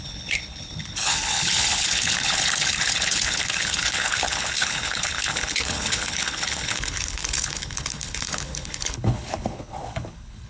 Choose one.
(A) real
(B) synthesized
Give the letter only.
B